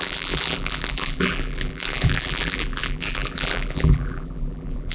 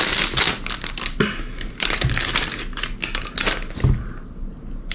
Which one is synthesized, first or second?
first